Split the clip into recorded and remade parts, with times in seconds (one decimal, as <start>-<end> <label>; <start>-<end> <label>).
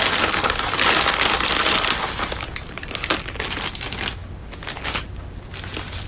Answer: 0.0-6.1 recorded